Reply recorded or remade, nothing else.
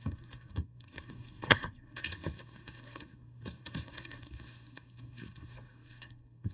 remade